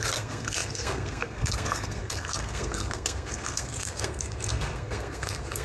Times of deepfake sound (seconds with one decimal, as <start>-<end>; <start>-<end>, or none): 0.0-5.6